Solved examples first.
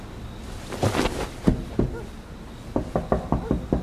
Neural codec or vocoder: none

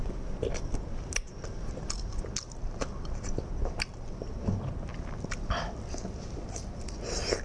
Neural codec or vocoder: none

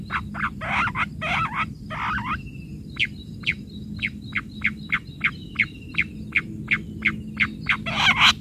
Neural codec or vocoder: none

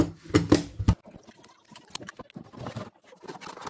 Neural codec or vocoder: none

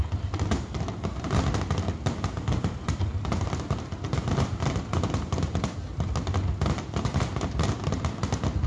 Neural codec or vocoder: none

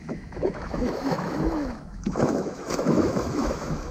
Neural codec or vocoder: autoencoder, DAC-VAE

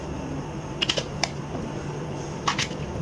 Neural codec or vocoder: vocoder, BigVGAN v2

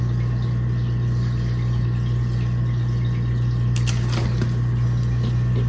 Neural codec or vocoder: none